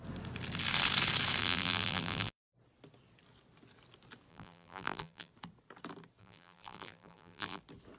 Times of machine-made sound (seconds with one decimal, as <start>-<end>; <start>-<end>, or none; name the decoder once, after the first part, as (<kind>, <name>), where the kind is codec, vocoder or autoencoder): 1.4-2.5 (vocoder, BigVGAN v2); 4.3-5.3; 6.2-7.6